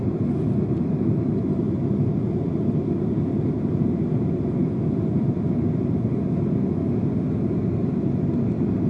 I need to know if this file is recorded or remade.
recorded